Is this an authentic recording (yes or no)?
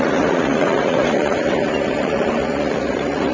no